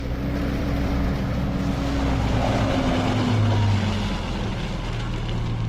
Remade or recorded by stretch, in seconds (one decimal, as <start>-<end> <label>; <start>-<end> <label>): 0.0-0.4 recorded; 0.4-1.2 remade; 1.2-5.7 recorded